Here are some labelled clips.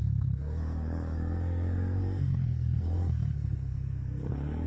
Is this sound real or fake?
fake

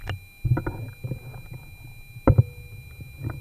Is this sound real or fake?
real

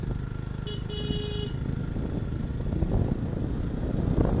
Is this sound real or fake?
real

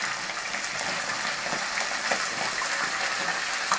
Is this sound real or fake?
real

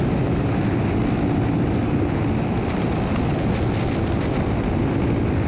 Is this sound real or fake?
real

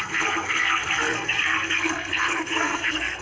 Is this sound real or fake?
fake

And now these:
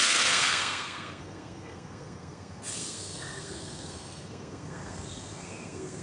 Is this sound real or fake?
fake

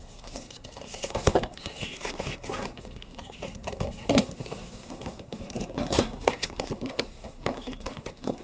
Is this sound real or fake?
fake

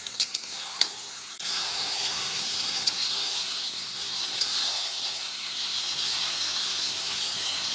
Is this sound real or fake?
fake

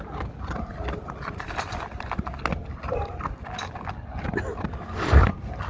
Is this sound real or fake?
real